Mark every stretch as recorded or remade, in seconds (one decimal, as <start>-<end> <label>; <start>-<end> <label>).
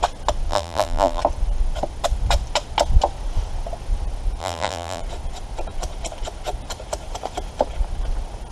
0.0-0.5 recorded; 0.5-1.2 remade; 1.2-4.4 recorded; 4.4-5.0 remade; 5.0-8.5 recorded